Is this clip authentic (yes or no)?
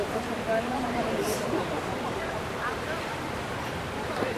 no